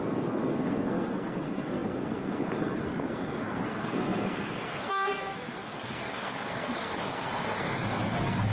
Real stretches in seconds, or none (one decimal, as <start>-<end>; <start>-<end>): none